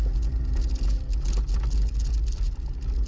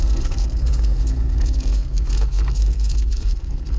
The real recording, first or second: first